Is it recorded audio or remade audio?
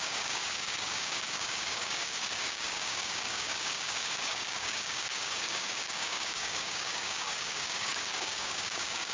remade